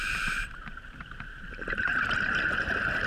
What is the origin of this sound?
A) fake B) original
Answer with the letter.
A